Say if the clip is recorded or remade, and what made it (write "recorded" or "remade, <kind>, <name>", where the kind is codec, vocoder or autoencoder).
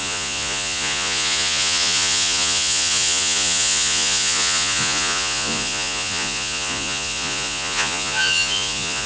remade, vocoder, Vocos